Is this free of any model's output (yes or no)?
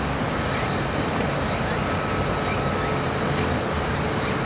yes